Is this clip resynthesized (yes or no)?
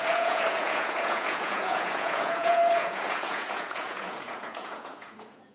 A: yes